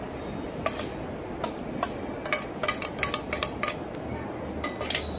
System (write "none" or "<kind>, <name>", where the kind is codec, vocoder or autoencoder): none